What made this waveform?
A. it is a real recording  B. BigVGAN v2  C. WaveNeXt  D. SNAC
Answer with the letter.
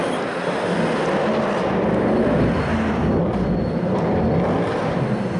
A